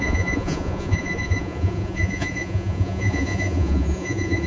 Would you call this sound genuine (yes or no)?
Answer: no